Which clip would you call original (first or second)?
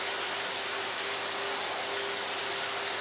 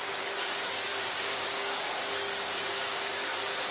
first